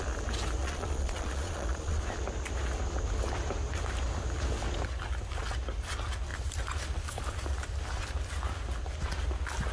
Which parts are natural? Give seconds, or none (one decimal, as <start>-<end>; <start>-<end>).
0.0-0.6; 2.0-9.7